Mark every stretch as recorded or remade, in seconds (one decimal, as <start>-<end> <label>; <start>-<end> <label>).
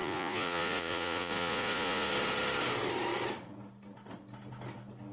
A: 0.0-2.1 remade; 2.1-5.1 recorded